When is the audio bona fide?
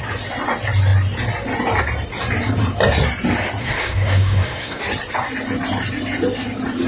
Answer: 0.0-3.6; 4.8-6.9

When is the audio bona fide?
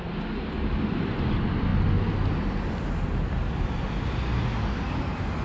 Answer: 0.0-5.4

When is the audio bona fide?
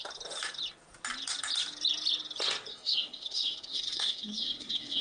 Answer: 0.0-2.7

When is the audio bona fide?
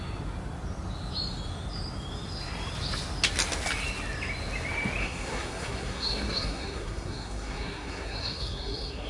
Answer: 0.0-5.0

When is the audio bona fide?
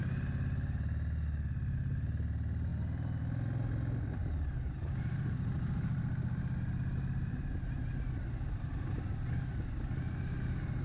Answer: 0.0-10.8